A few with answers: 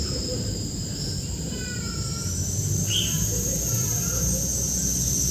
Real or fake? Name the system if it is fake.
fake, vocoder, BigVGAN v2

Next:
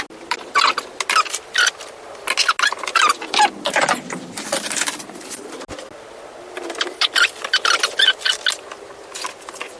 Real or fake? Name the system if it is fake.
real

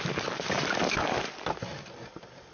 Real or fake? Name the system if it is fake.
real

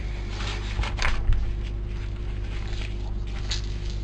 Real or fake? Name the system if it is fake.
real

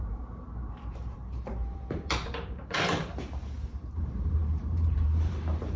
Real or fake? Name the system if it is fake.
fake, vocoder, BigVGAN v2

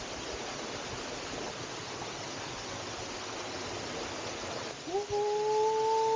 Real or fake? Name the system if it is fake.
real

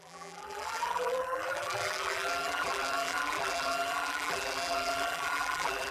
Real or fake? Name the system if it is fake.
fake, vocoder, BigVGAN v2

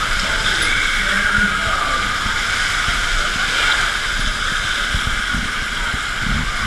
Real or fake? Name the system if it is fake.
real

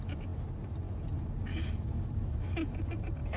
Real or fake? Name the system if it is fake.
real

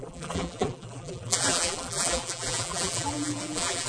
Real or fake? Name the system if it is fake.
fake, vocoder, BigVGAN v2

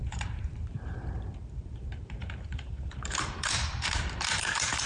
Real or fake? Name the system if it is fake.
fake, vocoder, BigVGAN v2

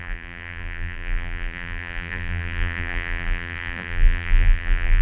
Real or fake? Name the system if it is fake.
fake, vocoder, BigVGAN v2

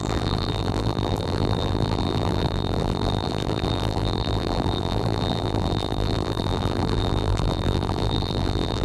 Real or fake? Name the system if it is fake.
fake, vocoder, BigVGAN v2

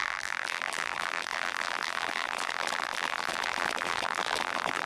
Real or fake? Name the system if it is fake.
fake, vocoder, BigVGAN v2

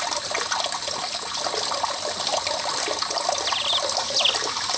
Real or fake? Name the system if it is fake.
real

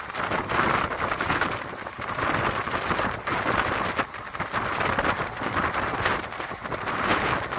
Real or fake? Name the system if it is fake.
fake, vocoder, BigVGAN v2